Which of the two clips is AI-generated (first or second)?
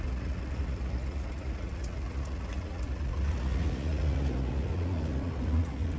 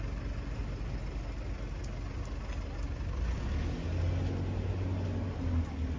first